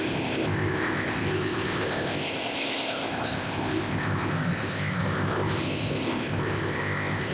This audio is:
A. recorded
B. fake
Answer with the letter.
B